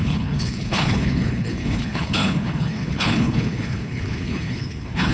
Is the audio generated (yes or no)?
yes